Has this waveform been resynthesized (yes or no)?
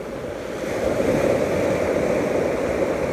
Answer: no